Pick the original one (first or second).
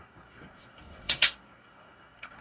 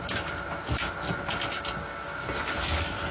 second